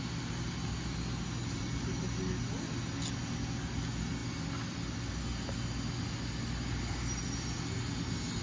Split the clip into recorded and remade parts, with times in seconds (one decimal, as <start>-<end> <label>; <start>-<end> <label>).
0.0-8.4 recorded